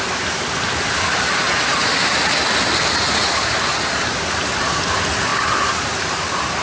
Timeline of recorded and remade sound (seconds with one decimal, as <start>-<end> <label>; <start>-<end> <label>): 0.0-6.6 recorded